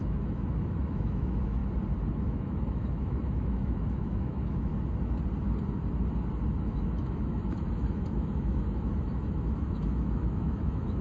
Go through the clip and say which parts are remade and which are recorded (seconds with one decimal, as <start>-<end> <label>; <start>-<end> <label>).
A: 0.0-1.6 remade; 1.6-2.1 recorded; 2.1-4.7 remade; 4.7-6.6 recorded; 6.6-11.0 remade